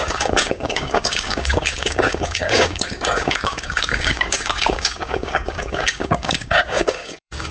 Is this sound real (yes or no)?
no